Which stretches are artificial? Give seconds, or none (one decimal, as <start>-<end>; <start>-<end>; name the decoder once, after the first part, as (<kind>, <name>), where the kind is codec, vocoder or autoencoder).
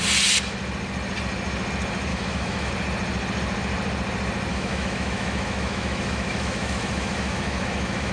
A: 2.1-2.7 (autoencoder, DAC-VAE); 4.5-8.1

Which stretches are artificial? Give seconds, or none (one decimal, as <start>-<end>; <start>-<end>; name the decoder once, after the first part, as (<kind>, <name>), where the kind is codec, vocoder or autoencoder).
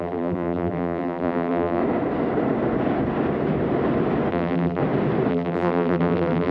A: 0.0-1.8 (vocoder, BigVGAN v2); 4.3-4.8; 5.3-6.5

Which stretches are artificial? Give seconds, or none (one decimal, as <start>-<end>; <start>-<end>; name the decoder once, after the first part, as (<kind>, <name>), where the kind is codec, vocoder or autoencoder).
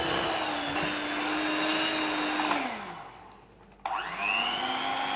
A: none